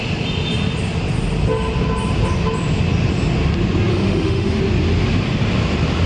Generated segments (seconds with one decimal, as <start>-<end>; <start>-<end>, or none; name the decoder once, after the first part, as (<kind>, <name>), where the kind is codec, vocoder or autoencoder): 3.9-4.6 (autoencoder, DAC-VAE)